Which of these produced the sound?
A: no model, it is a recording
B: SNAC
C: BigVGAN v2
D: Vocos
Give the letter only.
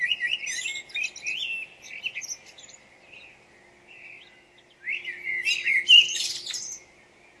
A